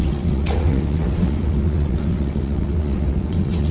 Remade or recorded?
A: remade